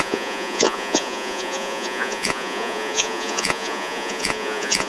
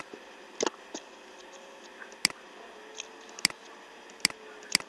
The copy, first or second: first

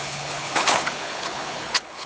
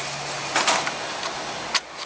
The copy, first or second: first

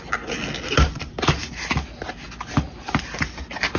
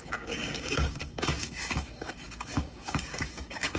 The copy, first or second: second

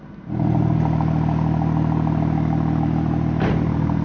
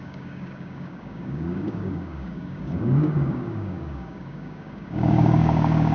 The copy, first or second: second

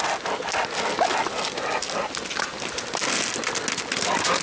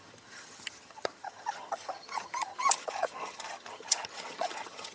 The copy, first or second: second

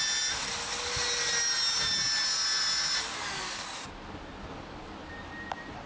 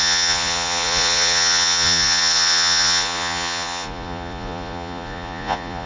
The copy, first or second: second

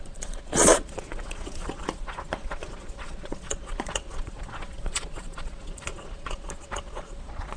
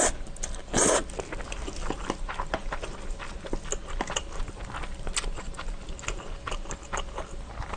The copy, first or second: first